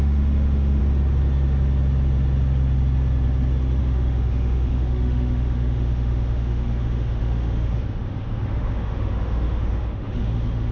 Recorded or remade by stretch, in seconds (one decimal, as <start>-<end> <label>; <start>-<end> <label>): 0.0-0.8 remade; 0.8-3.8 recorded; 3.8-10.7 remade